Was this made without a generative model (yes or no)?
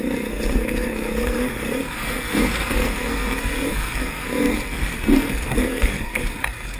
no